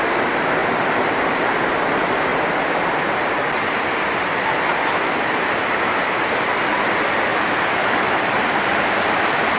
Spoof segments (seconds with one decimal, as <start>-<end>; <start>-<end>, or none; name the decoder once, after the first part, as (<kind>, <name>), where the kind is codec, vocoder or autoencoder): 0.6-1.3 (vocoder, BigVGAN v2); 5.3-6.2; 7.3-9.0

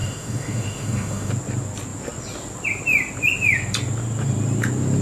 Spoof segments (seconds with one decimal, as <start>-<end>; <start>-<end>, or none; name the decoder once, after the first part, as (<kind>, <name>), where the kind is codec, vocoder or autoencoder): 0.0-1.3 (autoencoder, DAC-VAE)